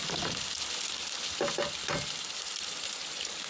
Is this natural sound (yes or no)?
yes